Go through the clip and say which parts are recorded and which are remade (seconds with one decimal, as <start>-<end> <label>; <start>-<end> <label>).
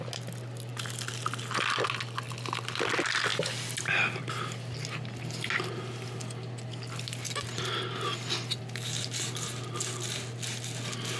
0.0-11.2 recorded